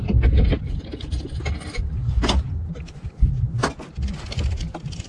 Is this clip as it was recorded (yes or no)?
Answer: yes